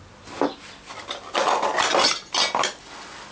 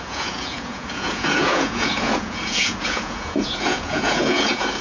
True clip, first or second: first